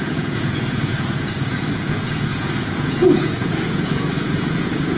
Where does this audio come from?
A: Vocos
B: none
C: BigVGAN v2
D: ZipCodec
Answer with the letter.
A